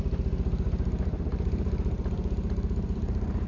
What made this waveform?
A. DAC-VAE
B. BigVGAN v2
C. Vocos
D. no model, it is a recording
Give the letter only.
B